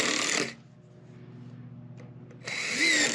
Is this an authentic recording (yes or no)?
yes